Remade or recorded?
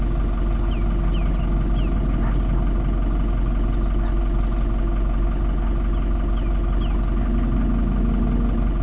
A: recorded